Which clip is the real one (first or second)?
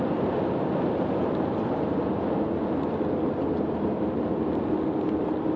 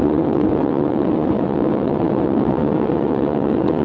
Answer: first